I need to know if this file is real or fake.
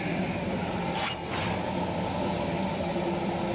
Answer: real